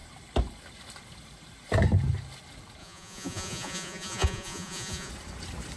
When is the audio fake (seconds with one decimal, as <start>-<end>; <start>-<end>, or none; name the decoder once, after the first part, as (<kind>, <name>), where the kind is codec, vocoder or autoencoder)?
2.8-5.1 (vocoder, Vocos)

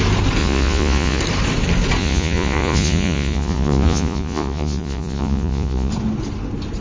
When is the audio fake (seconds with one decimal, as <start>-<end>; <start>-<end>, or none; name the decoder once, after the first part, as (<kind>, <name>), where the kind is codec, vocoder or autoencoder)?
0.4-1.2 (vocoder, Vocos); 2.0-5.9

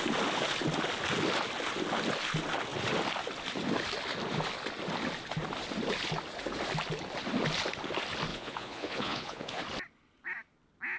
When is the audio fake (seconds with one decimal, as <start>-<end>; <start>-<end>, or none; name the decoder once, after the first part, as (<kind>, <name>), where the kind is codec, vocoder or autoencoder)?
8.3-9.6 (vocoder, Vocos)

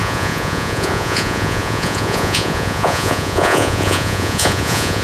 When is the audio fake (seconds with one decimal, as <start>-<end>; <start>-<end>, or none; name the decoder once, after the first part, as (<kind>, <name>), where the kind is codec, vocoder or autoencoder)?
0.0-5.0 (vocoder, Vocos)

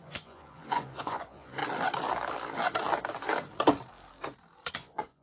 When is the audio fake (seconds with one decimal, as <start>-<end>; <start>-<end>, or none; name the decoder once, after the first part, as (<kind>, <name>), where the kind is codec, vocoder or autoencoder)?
0.0-1.6 (vocoder, Vocos); 4.7-5.2

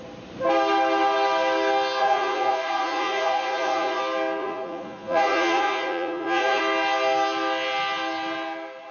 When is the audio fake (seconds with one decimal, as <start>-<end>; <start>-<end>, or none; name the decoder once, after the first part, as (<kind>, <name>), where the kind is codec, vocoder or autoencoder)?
2.0-4.0 (vocoder, Vocos); 4.4-6.6